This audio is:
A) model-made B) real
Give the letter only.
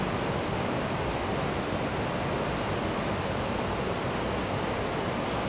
B